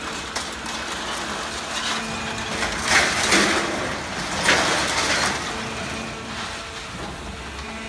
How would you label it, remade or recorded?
recorded